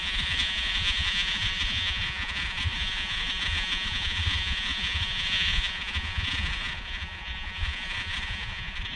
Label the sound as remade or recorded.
remade